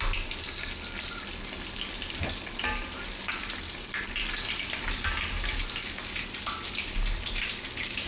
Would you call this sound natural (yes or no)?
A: yes